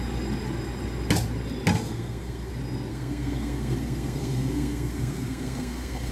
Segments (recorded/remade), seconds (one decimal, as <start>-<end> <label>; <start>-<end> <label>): 0.0-1.7 recorded; 1.7-2.5 remade; 2.5-2.9 recorded; 2.9-6.1 remade